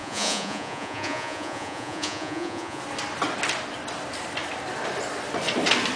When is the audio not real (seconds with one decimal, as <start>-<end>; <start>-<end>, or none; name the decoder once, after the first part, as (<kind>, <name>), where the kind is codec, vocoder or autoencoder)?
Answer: 0.0-2.8 (vocoder, Vocos)